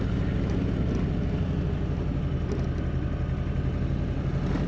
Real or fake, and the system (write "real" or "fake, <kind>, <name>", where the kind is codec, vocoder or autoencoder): real